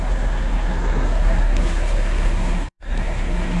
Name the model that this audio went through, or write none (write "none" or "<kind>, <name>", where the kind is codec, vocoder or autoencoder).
codec, SNAC